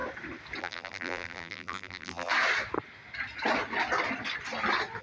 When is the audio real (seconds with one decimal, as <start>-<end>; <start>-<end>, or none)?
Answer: 0.0-0.6; 2.3-5.0

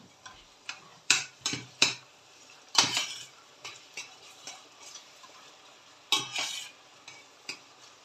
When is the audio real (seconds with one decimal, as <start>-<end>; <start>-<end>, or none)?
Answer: 0.0-0.9; 5.5-8.0

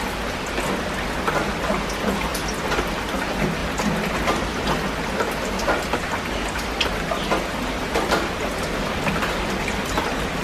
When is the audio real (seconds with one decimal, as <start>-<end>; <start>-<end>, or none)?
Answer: 0.0-10.4